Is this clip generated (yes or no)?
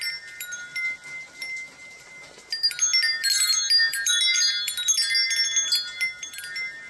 no